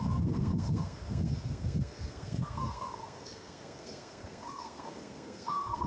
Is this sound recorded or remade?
remade